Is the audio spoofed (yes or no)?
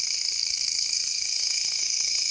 yes